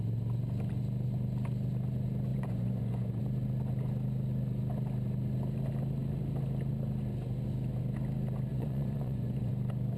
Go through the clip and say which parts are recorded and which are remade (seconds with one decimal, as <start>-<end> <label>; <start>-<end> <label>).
0.0-2.3 recorded; 2.3-3.2 remade; 3.2-8.5 recorded; 8.5-9.5 remade; 9.5-10.0 recorded